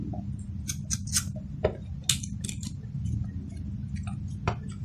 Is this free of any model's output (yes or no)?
yes